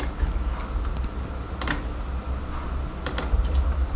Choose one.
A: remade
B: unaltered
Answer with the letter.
B